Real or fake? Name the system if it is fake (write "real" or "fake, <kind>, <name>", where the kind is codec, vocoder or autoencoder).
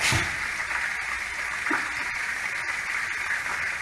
real